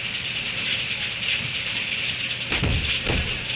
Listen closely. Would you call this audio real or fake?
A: real